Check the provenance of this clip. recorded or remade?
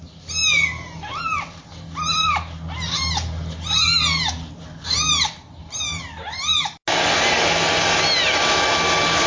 recorded